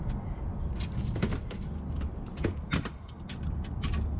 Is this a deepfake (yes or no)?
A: no